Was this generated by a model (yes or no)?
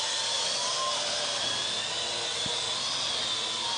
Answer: no